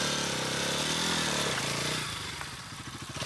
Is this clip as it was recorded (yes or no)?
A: yes